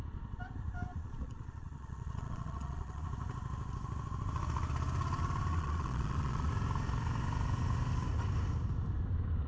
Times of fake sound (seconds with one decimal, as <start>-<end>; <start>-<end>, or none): 0.9-3.1; 5.5-6.5